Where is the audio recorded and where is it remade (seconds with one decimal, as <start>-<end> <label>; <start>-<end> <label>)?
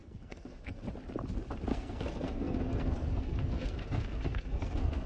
0.0-0.8 remade; 0.8-1.7 recorded; 1.7-5.1 remade